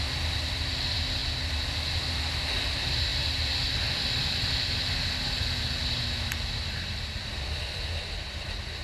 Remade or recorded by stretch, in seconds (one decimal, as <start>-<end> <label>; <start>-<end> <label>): 0.0-8.8 recorded